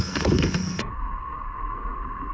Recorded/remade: remade